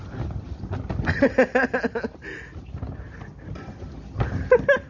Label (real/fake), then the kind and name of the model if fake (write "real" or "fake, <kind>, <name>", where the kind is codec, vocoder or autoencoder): real